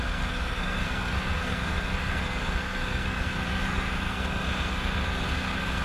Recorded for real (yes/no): no